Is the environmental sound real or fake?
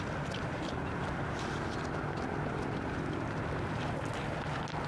real